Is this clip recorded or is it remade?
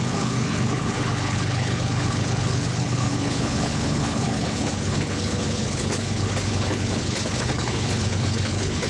remade